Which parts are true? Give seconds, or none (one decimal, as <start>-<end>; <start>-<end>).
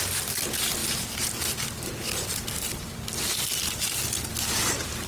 0.0-0.8; 1.9-5.1